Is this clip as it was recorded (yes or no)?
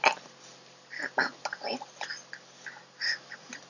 yes